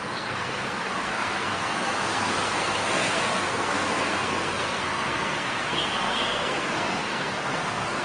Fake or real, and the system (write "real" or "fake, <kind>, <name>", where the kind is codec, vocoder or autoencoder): fake, codec, SNAC